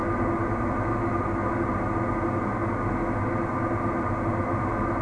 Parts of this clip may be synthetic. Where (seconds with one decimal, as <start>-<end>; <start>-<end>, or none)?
none